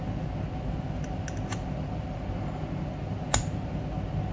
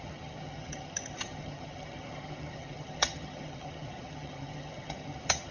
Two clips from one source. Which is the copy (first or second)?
second